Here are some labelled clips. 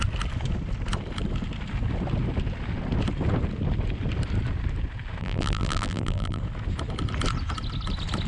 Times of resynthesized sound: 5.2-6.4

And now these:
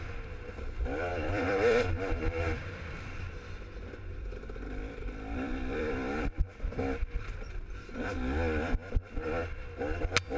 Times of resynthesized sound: 1.1-3.3; 4.1-7.5

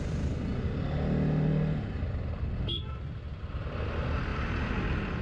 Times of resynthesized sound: 4.3-4.8

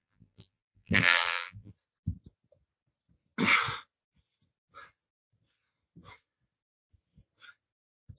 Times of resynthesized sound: 0.0-1.7

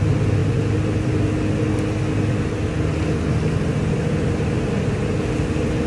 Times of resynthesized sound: none

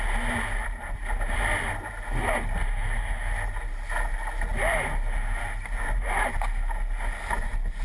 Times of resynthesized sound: 0.6-1.7